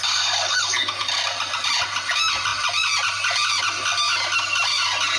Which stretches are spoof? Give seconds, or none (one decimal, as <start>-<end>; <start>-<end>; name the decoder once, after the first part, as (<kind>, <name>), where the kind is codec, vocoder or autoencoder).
0.0-1.5 (vocoder, BigVGAN v2); 2.5-3.6